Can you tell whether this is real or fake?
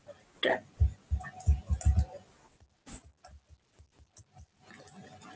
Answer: real